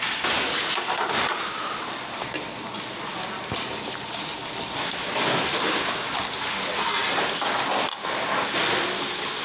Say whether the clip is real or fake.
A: real